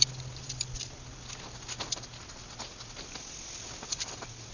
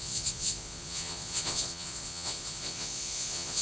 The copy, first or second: second